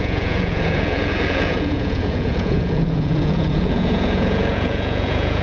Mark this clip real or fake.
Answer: fake